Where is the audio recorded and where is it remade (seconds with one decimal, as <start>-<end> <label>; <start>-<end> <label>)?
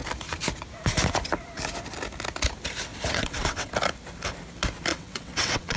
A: 0.0-2.9 recorded; 2.9-3.7 remade; 3.7-4.9 recorded; 4.9-5.8 remade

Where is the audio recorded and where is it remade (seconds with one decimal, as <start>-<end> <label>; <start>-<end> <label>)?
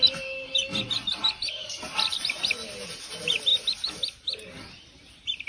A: 0.0-5.5 recorded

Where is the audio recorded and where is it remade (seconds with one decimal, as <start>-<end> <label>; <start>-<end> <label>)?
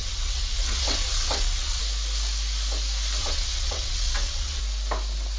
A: 0.0-1.8 remade; 1.8-3.2 recorded; 3.2-4.6 remade; 4.6-5.4 recorded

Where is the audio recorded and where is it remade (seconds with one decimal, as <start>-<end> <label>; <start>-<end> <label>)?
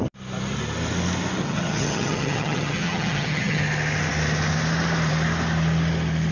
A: 0.0-1.4 recorded; 1.4-3.6 remade; 3.6-6.3 recorded